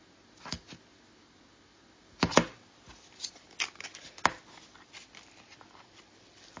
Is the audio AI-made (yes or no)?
yes